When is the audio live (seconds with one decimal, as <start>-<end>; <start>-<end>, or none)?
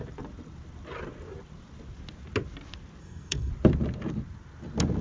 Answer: 0.0-3.0; 3.5-5.0